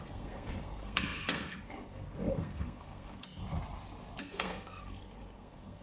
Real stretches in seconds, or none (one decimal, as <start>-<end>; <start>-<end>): 3.4-4.2